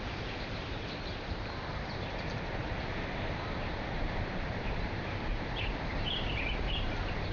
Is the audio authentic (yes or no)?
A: no